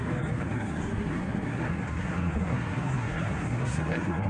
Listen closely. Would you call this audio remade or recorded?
remade